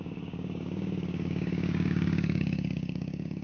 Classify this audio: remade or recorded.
remade